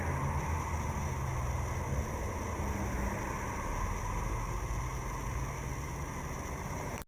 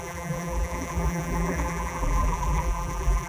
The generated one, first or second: second